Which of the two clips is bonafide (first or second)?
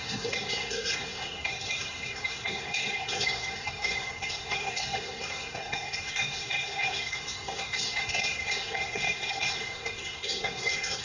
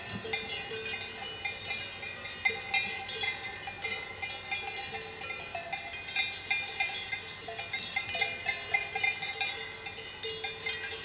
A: second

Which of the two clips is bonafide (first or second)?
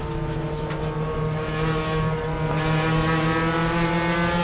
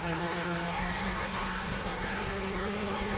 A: first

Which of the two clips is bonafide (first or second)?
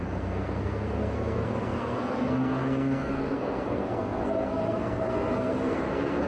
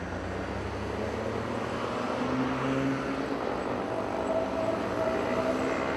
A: second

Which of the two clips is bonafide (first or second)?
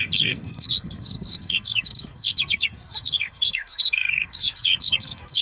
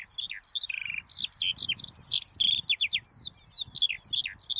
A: second